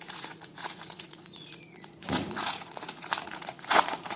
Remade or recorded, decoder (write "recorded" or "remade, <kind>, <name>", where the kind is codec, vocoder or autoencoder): remade, vocoder, Vocos